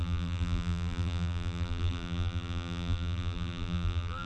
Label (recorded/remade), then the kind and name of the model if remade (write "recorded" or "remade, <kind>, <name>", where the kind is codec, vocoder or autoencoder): remade, vocoder, BigVGAN v2